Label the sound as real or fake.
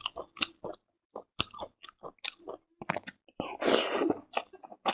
real